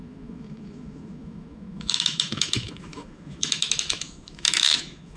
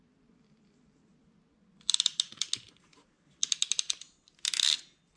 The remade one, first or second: first